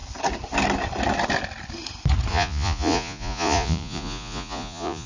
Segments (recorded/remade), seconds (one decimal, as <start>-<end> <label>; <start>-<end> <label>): 0.0-2.3 recorded; 2.3-5.1 remade